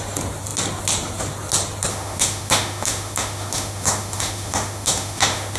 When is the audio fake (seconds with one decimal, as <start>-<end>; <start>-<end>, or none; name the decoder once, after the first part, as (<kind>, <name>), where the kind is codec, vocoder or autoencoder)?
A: 1.9-5.6 (autoencoder, DAC-VAE)